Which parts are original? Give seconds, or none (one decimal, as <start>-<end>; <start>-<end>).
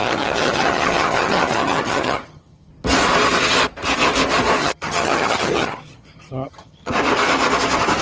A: 2.7-4.6; 6.9-8.0